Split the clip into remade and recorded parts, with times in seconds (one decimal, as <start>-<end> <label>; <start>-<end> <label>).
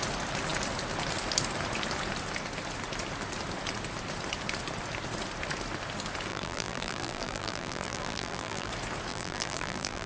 0.0-6.3 recorded; 6.3-8.7 remade; 8.7-9.1 recorded; 9.1-10.1 remade